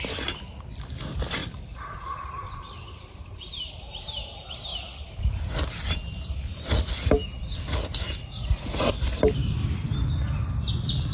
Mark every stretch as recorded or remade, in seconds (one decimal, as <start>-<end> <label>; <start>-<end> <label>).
0.0-1.4 recorded; 1.4-3.5 remade; 3.5-8.2 recorded; 8.2-8.9 remade; 8.9-11.1 recorded